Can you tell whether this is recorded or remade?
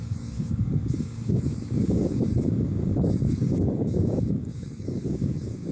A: remade